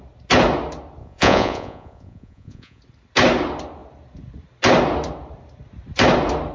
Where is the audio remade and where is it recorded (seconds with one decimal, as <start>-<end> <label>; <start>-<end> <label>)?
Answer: 0.0-1.0 recorded; 1.0-2.8 remade; 2.8-6.5 recorded